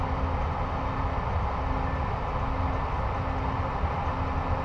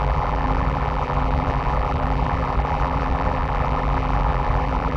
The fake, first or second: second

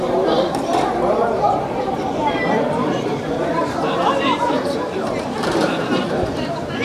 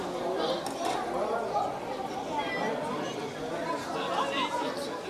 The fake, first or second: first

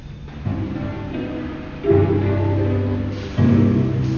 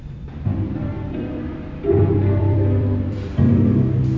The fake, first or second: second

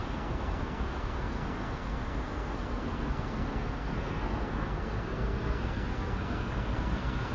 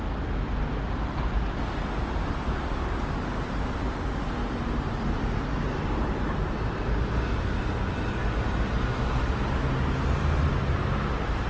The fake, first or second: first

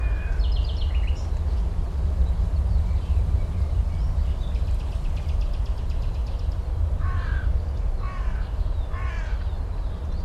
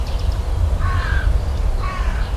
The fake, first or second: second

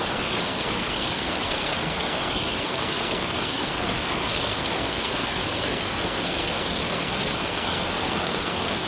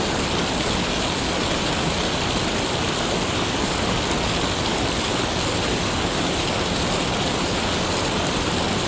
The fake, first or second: first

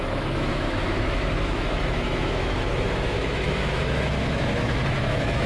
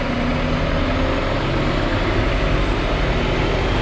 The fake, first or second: first